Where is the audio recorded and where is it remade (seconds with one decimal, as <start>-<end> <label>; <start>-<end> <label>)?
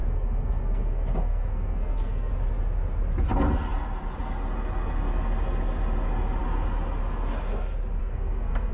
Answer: 0.0-2.3 remade; 2.3-8.0 recorded; 8.0-8.7 remade